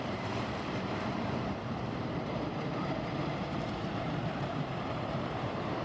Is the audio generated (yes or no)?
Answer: yes